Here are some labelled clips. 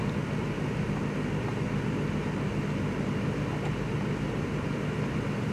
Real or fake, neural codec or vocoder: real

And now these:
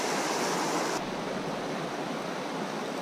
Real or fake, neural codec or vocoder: real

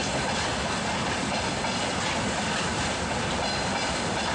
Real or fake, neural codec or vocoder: fake, vocoder, BigVGAN v2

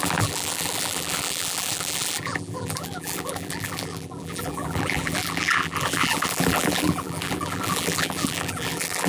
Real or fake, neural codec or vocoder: fake, vocoder, BigVGAN v2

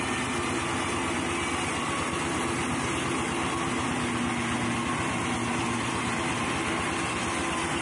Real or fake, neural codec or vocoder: real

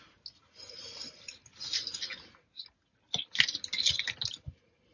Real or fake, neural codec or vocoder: real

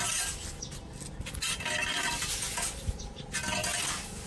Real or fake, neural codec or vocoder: real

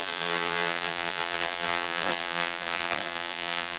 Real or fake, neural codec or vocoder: fake, vocoder, BigVGAN v2